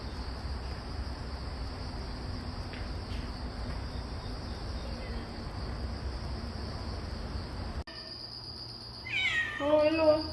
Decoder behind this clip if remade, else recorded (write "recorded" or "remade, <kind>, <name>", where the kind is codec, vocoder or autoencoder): recorded